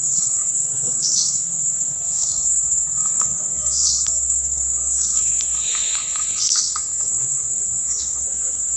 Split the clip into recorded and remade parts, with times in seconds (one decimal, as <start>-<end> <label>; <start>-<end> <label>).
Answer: 0.0-8.8 remade